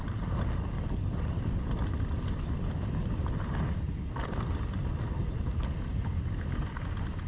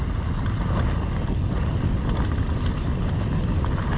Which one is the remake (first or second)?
first